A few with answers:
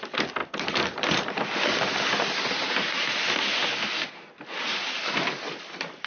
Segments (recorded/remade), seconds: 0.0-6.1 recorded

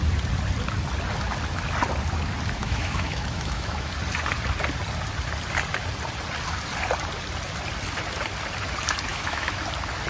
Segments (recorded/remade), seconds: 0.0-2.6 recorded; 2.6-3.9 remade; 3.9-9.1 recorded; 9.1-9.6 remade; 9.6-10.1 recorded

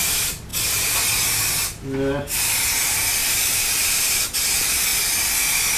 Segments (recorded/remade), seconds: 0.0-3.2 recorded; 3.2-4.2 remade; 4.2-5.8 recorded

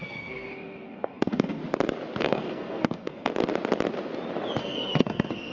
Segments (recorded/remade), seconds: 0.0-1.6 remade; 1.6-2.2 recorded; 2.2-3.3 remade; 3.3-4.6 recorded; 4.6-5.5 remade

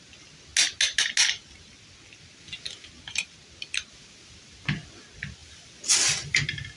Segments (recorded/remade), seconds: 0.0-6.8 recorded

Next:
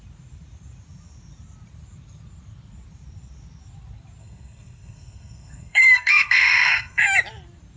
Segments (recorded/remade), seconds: 0.0-4.2 recorded; 4.2-7.0 remade; 7.0-7.8 recorded

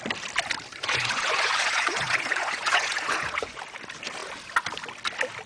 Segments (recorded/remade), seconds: 0.0-0.7 recorded; 0.7-3.6 remade; 3.6-5.5 recorded